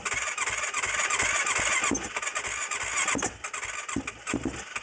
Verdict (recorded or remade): recorded